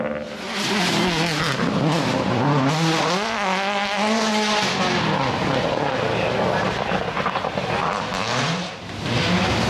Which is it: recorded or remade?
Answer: recorded